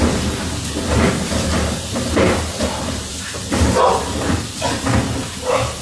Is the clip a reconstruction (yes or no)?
no